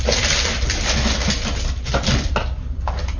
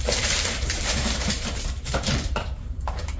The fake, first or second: second